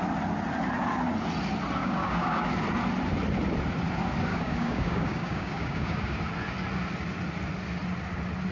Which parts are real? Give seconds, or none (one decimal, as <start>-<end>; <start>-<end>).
0.0-1.8; 2.5-4.3; 6.2-8.5

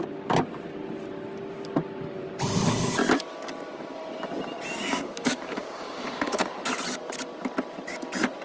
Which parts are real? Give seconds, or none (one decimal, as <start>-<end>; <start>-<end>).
0.0-4.8; 6.5-8.4